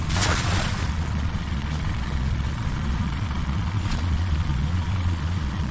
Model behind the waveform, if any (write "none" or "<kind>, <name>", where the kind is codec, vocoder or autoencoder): vocoder, Vocos